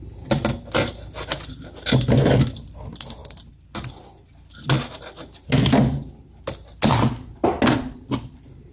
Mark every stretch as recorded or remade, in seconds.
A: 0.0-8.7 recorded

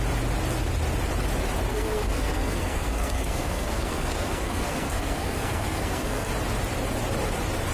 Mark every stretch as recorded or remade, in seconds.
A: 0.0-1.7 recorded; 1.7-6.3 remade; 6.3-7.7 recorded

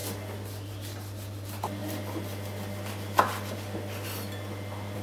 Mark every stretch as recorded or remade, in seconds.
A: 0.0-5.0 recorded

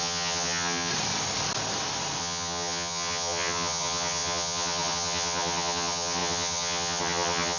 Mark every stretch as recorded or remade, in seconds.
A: 0.0-0.9 remade; 0.9-2.2 recorded; 2.2-7.6 remade

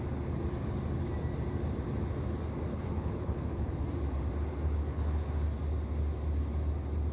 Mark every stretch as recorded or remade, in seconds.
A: 0.0-2.7 recorded; 2.7-3.7 remade; 3.7-4.8 recorded; 4.8-5.3 remade; 5.3-7.1 recorded